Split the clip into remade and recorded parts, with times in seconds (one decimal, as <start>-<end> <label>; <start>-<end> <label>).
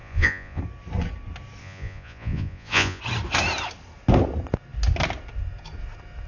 0.0-0.6 remade; 0.6-1.6 recorded; 1.6-3.0 remade; 3.0-6.3 recorded